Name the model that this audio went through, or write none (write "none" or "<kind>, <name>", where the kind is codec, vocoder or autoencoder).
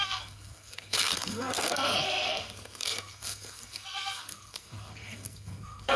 codec, SNAC